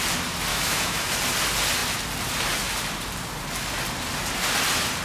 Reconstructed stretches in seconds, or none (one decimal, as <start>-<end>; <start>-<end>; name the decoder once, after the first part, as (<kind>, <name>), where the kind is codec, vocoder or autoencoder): 0.5-1.2 (autoencoder, DAC-VAE)